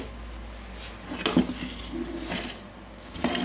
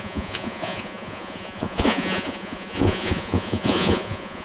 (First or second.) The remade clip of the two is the second